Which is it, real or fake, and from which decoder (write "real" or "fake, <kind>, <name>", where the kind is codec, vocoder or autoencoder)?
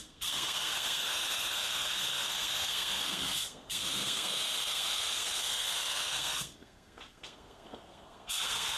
fake, codec, SNAC